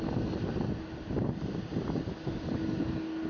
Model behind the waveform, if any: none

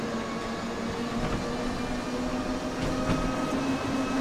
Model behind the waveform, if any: none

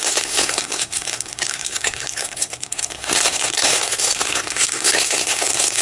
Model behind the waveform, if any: codec, SNAC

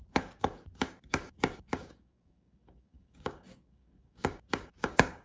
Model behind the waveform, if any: codec, DAC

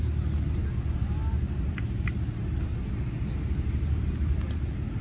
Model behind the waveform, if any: none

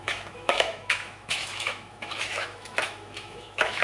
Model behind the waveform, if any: autoencoder, DAC-VAE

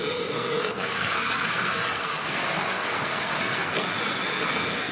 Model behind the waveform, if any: codec, SNAC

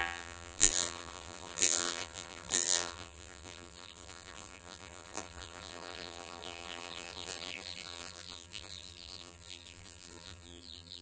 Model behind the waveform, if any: vocoder, BigVGAN v2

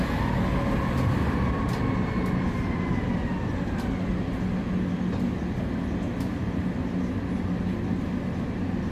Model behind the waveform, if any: none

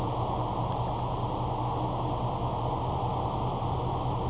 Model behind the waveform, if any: none